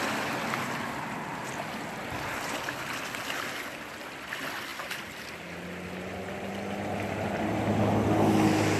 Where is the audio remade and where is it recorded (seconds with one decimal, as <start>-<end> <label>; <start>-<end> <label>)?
0.0-4.7 recorded; 4.7-5.2 remade; 5.2-8.8 recorded